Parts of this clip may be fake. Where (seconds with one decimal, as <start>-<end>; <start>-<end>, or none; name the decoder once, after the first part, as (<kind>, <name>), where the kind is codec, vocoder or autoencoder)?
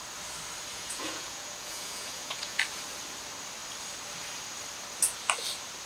0.7-2.6 (vocoder, Vocos)